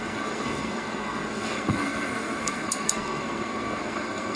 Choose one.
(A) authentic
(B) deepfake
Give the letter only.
B